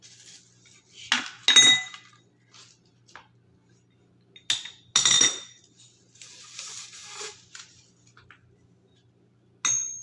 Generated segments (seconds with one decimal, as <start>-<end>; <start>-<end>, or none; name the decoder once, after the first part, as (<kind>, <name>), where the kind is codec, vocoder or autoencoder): 7.0-7.8 (vocoder, BigVGAN v2)